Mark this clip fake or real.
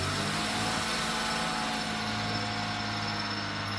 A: real